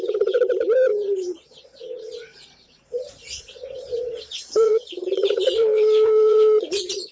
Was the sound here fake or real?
fake